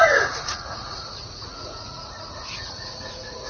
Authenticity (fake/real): fake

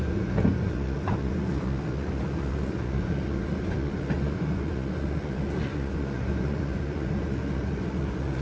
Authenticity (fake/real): fake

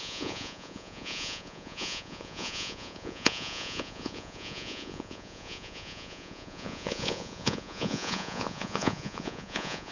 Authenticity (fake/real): fake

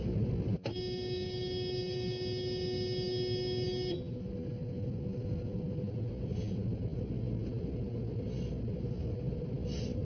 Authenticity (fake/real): real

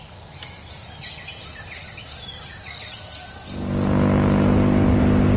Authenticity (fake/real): real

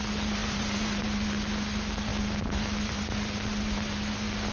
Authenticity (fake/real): real